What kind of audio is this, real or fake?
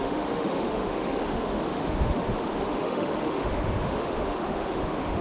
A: fake